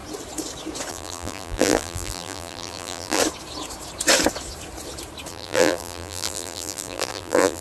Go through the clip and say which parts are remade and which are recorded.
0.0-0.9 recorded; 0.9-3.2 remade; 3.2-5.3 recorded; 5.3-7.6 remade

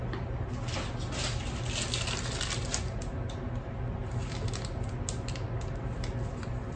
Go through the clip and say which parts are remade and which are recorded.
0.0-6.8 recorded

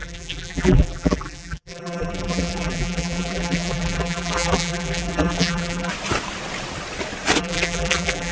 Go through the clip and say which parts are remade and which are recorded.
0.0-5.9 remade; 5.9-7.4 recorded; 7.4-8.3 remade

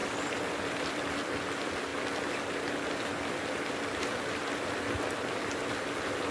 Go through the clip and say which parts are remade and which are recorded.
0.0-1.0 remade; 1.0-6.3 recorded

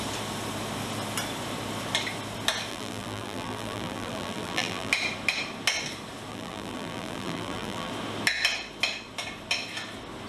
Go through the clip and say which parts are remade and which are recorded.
0.0-2.7 recorded; 2.7-4.9 remade; 4.9-6.3 recorded; 6.3-7.9 remade; 7.9-10.3 recorded

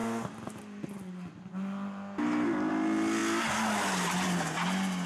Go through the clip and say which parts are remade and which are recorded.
0.0-5.1 recorded